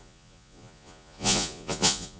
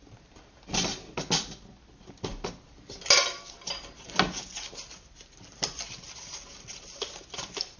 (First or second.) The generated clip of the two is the first